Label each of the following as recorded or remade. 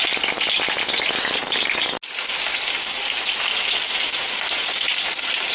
recorded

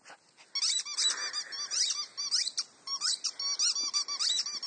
recorded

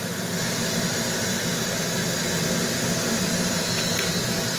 recorded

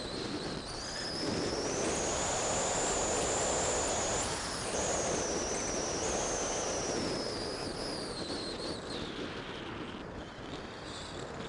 recorded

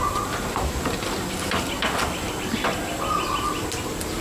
recorded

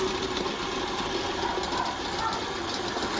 recorded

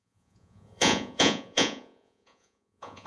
remade